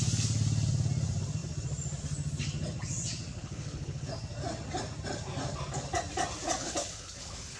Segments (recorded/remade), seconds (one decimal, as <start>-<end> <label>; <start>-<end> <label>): 0.0-3.3 recorded; 3.3-4.1 remade; 4.1-6.6 recorded; 6.6-7.6 remade